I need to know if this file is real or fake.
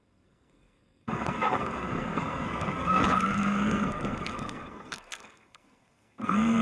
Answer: fake